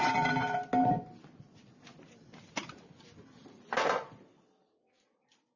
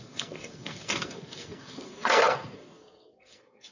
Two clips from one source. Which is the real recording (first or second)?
first